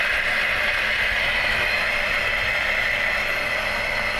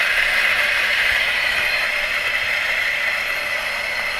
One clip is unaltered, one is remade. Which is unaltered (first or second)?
first